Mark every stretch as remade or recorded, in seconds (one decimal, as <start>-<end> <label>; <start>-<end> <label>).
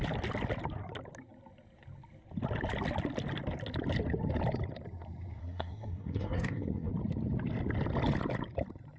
0.0-5.4 recorded; 5.4-6.9 remade; 6.9-9.0 recorded